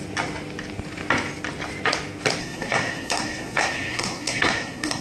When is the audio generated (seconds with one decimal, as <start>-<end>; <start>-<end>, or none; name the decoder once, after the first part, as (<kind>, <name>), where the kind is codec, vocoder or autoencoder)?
2.4-5.0 (codec, SNAC)